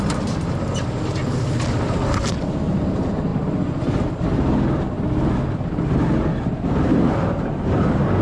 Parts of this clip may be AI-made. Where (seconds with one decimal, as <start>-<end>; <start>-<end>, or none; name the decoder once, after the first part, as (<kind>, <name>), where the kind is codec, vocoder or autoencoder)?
6.9-8.2 (vocoder, BigVGAN v2)